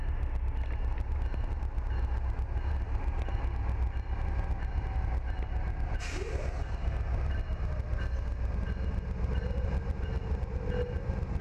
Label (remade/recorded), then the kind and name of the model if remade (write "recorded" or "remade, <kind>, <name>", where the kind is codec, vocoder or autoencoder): recorded